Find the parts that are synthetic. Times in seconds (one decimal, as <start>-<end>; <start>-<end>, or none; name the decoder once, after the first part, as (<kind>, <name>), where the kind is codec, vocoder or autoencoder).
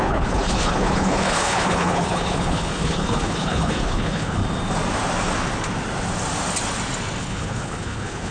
0.0-4.4 (codec, HILCodec); 7.2-8.3